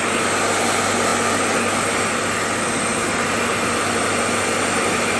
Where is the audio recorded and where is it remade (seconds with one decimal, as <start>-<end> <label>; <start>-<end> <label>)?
0.0-5.2 recorded